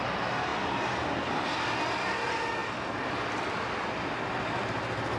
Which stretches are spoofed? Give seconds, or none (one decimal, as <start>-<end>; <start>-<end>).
none

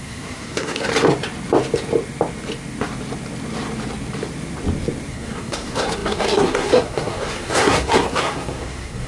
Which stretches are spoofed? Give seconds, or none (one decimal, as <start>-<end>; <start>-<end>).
0.0-0.9; 5.1-9.1

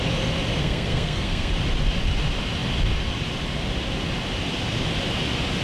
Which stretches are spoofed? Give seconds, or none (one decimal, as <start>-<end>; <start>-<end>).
0.6-1.5

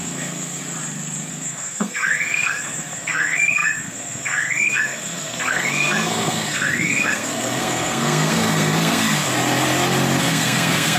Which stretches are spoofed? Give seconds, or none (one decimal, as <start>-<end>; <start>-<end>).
0.0-0.6; 1.3-9.3; 10.2-11.0